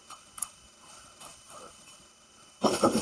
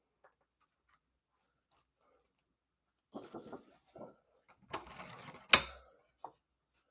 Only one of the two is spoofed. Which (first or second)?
first